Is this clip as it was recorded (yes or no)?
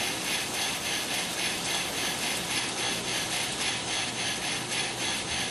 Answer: yes